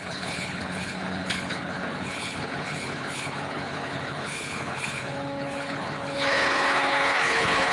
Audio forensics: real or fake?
fake